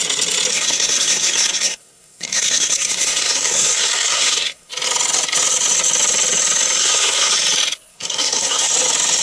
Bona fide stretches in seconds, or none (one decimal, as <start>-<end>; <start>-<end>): 0.0-0.5; 4.7-6.8; 7.3-7.9; 8.7-9.2